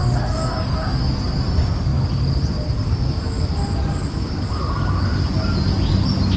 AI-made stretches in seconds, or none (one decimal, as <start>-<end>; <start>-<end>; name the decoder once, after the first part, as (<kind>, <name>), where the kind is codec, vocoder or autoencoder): 0.0-1.0 (codec, DAC)